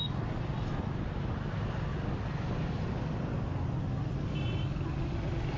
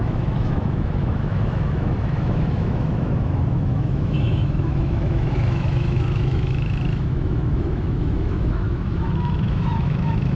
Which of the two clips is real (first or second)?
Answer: first